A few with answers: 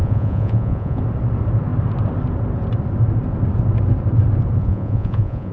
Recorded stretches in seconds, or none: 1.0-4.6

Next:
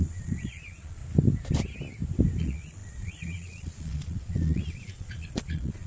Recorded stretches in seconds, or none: 1.0-2.4

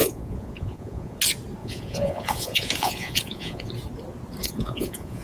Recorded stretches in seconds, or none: 1.2-1.6; 3.7-4.4

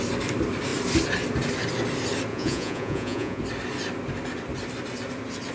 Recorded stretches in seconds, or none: 0.0-2.3; 3.4-5.5

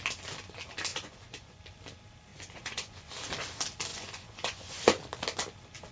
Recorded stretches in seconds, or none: 0.0-0.9; 1.6-2.3; 3.1-3.9; 5.0-5.9